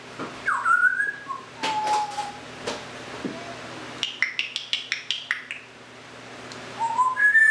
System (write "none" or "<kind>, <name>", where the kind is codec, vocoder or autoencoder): none